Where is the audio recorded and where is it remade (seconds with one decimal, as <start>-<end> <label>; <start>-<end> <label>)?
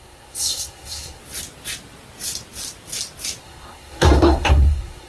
0.0-1.2 remade; 1.2-3.4 recorded; 3.4-5.1 remade